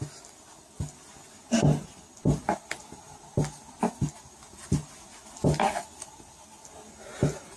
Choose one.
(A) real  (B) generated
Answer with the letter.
A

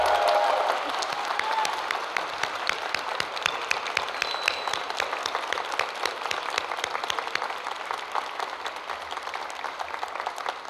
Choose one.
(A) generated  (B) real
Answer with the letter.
B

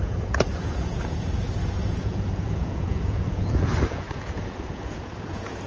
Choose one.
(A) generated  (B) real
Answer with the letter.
A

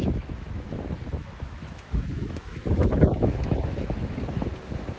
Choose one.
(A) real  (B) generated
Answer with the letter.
B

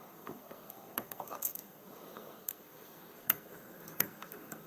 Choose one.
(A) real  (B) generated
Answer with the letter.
B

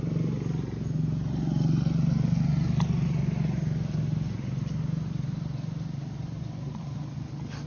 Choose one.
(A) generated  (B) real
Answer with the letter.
B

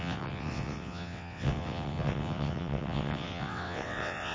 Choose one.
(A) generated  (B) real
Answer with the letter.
A